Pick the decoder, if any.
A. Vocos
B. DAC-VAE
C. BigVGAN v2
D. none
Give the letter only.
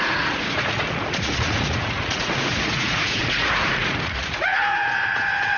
A